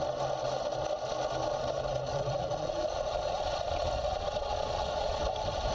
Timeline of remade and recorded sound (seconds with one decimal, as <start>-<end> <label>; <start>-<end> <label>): 0.0-2.1 recorded; 2.1-5.2 remade; 5.2-5.7 recorded